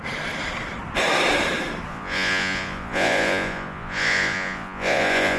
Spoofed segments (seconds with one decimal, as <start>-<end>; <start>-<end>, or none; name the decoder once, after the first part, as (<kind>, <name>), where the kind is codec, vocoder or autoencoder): 1.9-5.4 (vocoder, Vocos)

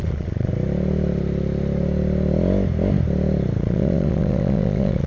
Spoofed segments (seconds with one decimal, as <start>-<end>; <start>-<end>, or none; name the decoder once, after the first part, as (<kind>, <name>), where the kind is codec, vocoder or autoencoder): 0.0-0.5 (vocoder, Vocos); 3.6-5.1

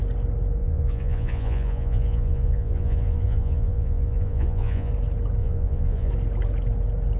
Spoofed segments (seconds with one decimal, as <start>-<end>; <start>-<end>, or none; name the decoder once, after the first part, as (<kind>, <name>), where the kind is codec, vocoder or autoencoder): 0.6-4.9 (vocoder, Vocos); 5.4-6.1

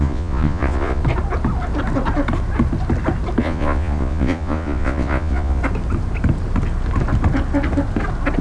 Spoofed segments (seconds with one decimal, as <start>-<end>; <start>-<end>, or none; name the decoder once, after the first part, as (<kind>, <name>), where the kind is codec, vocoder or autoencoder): 0.0-1.0 (vocoder, Vocos); 3.4-5.6

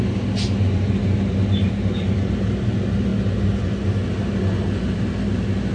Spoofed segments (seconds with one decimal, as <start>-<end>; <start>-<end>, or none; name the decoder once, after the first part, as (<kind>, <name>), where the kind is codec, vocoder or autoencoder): none

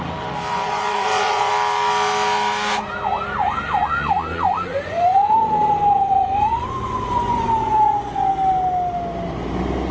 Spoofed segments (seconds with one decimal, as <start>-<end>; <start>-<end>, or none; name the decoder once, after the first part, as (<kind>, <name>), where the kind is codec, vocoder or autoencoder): 0.5-1.5 (vocoder, Vocos); 3.8-8.3

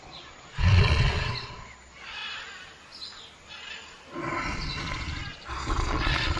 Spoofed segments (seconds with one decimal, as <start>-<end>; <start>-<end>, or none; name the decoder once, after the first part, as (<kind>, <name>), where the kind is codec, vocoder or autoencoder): 0.0-2.2 (vocoder, Vocos); 4.6-6.4

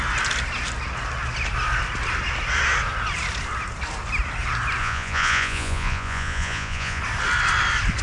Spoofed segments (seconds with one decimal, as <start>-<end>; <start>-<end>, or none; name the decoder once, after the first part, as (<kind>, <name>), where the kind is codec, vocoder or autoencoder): 4.8-7.0 (vocoder, Vocos)